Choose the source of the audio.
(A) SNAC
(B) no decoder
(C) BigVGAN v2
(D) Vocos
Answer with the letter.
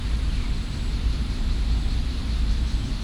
C